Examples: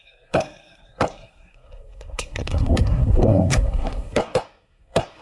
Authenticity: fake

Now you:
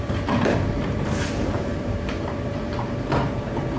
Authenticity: fake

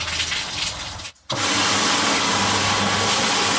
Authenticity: real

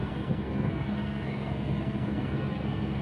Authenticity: fake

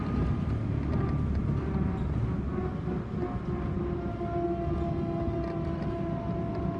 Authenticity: real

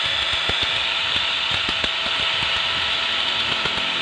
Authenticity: real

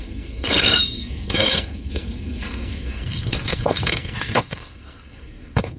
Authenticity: fake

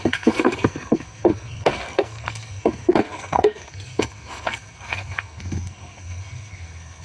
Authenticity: fake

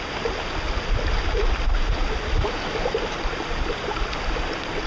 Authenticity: real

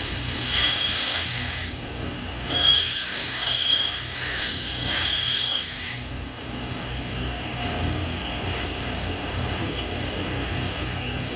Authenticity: fake